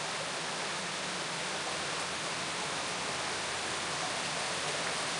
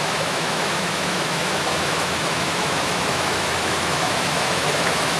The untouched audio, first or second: first